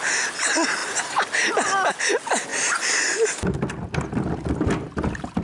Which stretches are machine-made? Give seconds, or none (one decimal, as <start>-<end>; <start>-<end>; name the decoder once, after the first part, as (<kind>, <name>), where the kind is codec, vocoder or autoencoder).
none